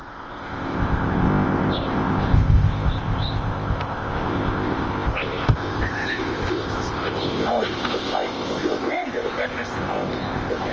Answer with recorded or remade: remade